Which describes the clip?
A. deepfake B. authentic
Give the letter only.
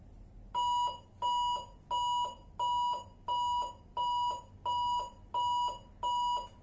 B